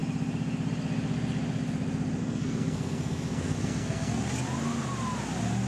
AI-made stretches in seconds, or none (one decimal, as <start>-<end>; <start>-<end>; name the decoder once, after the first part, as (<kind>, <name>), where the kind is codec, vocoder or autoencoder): 2.2-4.2 (codec, SNAC)